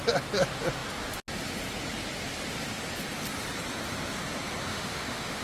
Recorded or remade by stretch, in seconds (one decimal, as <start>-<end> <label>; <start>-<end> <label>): 0.0-4.7 recorded; 4.7-5.4 remade